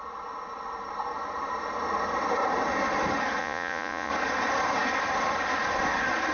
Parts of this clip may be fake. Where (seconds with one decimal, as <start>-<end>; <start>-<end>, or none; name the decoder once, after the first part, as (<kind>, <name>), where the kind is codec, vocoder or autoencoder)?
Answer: 3.4-4.1 (vocoder, Vocos)

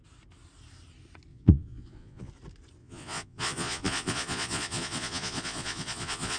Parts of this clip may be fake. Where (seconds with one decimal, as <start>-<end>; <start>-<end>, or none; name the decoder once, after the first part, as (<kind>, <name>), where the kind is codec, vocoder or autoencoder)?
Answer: 1.3-2.3 (vocoder, Vocos); 2.8-6.4

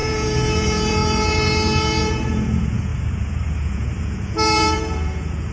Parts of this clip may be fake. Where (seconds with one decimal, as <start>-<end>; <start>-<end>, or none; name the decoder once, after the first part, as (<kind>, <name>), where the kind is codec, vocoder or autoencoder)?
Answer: 0.0-5.5 (vocoder, Vocos)

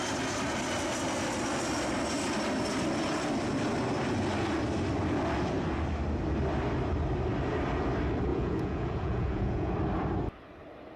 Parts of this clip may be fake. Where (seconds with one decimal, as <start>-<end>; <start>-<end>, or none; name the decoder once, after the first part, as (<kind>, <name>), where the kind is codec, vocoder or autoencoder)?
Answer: 8.3-9.7 (vocoder, Vocos)

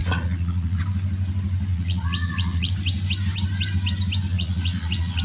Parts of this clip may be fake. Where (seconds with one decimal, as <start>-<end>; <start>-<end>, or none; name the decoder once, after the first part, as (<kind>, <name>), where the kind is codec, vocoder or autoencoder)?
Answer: 0.0-0.8 (vocoder, Vocos); 1.7-2.7; 4.3-5.2

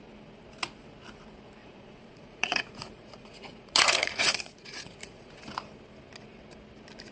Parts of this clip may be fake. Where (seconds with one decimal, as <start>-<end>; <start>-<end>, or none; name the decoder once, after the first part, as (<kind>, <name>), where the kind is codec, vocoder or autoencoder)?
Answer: 1.6-5.4 (vocoder, Vocos)

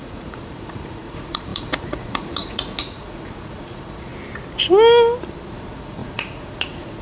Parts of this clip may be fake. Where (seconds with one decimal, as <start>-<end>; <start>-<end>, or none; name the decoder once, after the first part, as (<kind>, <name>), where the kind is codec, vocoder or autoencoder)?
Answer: 0.0-4.1 (vocoder, Vocos); 5.5-7.0